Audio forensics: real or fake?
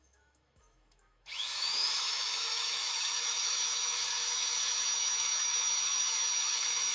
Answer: fake